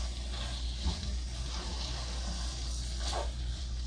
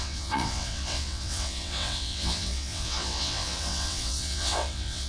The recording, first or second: first